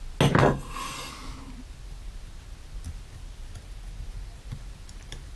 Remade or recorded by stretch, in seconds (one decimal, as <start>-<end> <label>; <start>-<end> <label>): 0.0-0.4 recorded; 0.4-1.1 remade; 1.1-5.4 recorded

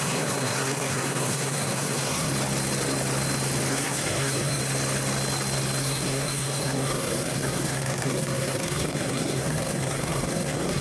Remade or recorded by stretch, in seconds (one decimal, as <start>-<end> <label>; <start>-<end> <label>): 0.0-2.3 remade; 2.3-3.7 recorded; 3.7-4.6 remade; 4.6-5.8 recorded; 5.8-10.8 remade

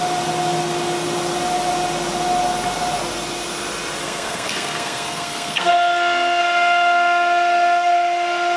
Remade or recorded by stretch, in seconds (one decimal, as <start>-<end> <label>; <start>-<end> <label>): 0.0-4.0 recorded; 4.0-6.4 remade; 6.4-8.6 recorded

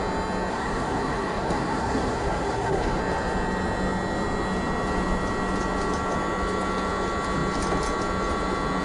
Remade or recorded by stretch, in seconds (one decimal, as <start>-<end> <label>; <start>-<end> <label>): 0.0-0.5 recorded; 0.5-3.0 remade; 3.0-8.8 recorded

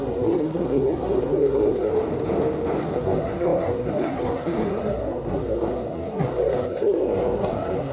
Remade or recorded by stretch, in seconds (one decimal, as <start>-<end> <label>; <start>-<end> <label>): 0.0-1.9 remade; 1.9-2.8 recorded; 2.8-7.9 remade

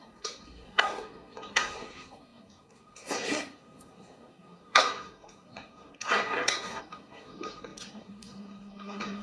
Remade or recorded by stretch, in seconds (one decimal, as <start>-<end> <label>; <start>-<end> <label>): 0.0-9.2 remade

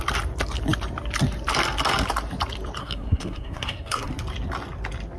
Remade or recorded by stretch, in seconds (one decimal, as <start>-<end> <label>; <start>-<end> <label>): 0.0-2.8 recorded; 2.8-4.1 remade; 4.1-5.2 recorded